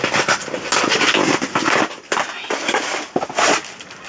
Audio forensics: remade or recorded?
recorded